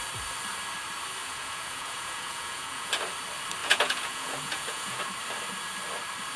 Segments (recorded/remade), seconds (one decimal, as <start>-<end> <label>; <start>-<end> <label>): 0.0-1.2 recorded; 1.2-2.9 remade; 2.9-3.6 recorded; 3.6-5.0 remade; 5.0-6.4 recorded